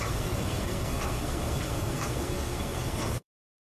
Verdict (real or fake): fake